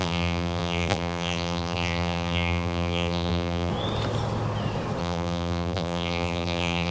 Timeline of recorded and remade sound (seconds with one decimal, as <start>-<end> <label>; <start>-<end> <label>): 0.0-3.7 remade; 3.7-5.0 recorded; 5.0-6.9 remade